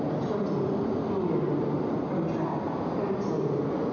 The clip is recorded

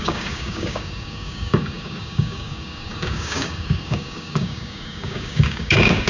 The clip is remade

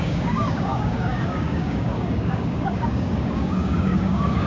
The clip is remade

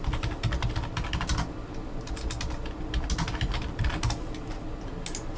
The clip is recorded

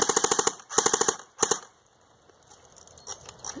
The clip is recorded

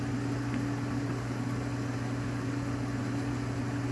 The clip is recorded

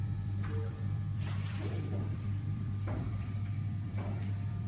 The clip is remade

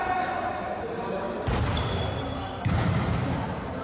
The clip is remade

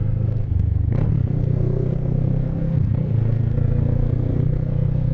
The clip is remade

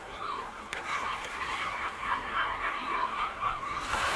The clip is remade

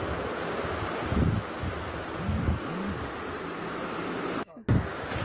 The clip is recorded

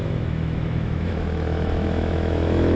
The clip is remade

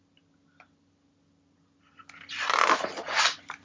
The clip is recorded